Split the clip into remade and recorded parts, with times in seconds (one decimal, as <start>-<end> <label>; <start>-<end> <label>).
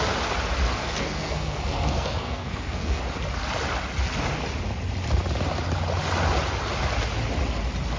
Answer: 0.0-0.8 recorded; 0.8-3.0 remade; 3.0-8.0 recorded